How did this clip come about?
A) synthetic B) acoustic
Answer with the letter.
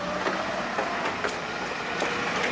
B